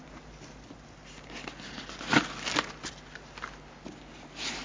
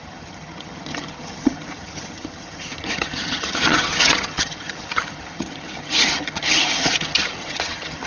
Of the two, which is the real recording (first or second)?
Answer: first